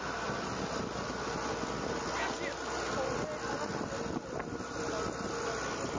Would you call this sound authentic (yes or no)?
yes